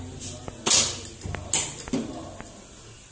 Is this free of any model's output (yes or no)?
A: yes